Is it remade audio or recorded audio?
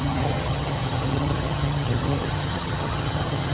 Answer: remade